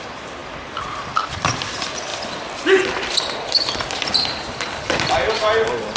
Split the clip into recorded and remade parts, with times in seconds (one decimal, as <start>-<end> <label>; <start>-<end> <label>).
0.0-6.0 recorded